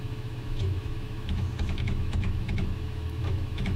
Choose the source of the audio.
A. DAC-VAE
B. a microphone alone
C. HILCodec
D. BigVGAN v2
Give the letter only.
A